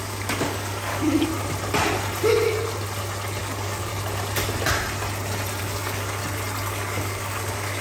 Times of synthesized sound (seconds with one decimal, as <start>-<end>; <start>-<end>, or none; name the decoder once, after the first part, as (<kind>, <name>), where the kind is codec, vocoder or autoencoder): 0.0-1.3 (codec, DAC); 3.4-3.9; 5.6-6.2; 6.7-7.8